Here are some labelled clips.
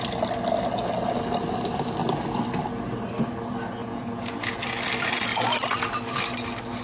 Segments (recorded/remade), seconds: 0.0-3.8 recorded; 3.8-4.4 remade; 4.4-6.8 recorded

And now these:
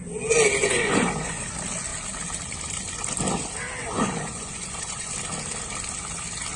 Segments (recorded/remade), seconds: 0.0-0.6 recorded; 0.6-1.5 remade; 1.5-3.8 recorded; 3.8-5.1 remade; 5.1-6.6 recorded

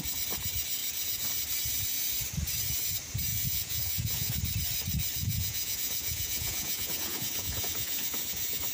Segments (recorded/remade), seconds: 0.0-3.3 recorded; 3.3-4.4 remade; 4.4-5.2 recorded; 5.2-8.7 remade

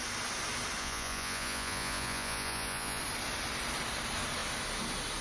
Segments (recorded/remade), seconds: 0.0-0.8 recorded; 0.8-3.0 remade; 3.0-5.2 recorded

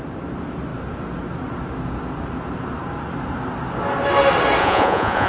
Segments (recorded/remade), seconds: 0.0-4.6 recorded; 4.6-5.3 remade

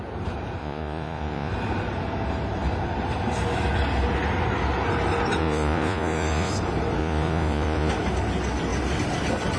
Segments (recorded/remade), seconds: 0.0-0.6 recorded; 0.6-1.5 remade; 1.5-5.4 recorded; 5.4-6.5 remade; 6.5-7.0 recorded; 7.0-7.9 remade; 7.9-9.6 recorded

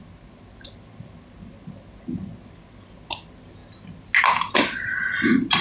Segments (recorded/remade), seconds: 0.0-5.6 recorded